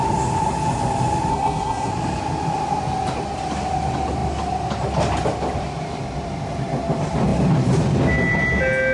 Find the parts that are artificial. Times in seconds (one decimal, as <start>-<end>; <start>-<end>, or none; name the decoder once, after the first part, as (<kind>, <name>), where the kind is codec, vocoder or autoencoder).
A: 1.3-1.9 (codec, SNAC)